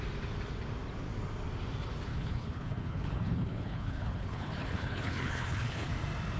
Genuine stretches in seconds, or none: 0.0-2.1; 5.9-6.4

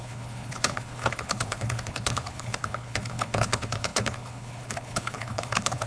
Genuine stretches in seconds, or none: none

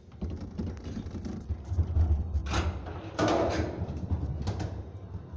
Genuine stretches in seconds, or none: 0.0-5.4

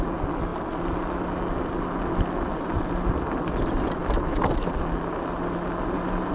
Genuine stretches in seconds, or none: 0.0-6.3

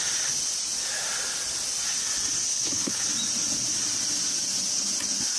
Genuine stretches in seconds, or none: 0.0-2.5; 3.1-5.4

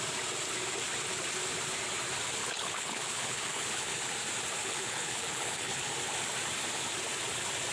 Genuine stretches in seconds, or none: 0.0-2.4; 4.1-4.6; 5.9-7.7

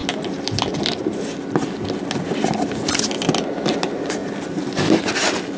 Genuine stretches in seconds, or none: 0.0-5.6